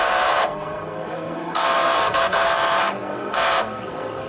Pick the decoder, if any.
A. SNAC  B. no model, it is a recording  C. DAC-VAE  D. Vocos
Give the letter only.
A